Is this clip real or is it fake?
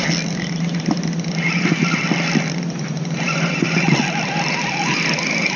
fake